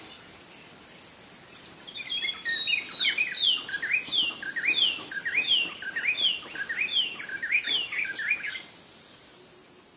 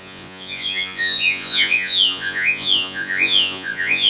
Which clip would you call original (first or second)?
first